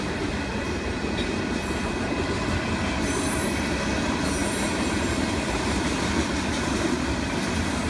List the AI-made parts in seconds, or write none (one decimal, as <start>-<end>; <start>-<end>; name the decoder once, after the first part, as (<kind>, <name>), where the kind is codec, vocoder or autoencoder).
none